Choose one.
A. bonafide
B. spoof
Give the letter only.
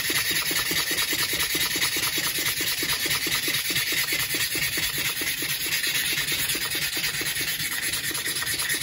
A